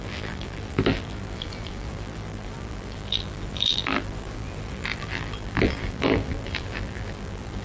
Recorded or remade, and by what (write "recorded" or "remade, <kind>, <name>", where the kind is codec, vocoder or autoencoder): remade, vocoder, BigVGAN v2